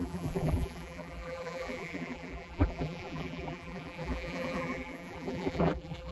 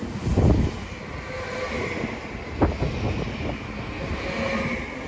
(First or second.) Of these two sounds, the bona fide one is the second